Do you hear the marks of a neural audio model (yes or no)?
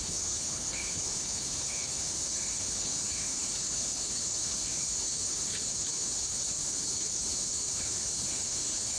yes